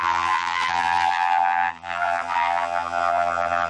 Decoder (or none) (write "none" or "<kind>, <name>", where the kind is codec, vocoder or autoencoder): vocoder, BigVGAN v2